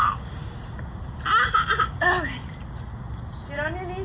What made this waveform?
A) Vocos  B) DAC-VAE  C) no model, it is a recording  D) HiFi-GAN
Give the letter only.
C